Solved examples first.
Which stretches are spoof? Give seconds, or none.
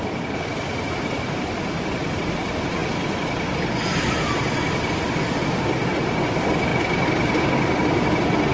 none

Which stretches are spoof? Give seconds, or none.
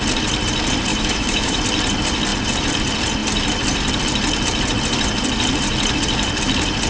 0.9-1.6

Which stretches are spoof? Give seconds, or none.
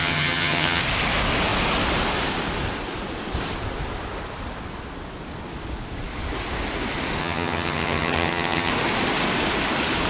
0.0-0.8; 7.2-8.7